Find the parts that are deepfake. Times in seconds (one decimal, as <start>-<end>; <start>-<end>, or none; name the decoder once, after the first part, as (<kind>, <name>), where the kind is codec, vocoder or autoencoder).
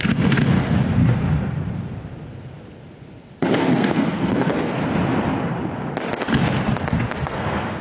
0.0-0.8 (codec, SNAC); 3.4-4.8; 7.2-7.8